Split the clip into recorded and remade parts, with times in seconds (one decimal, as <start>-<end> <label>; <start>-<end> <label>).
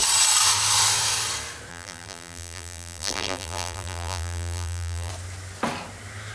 0.0-1.7 recorded; 1.7-5.1 remade; 5.1-6.3 recorded